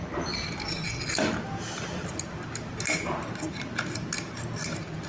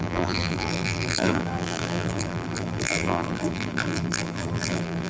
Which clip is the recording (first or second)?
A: first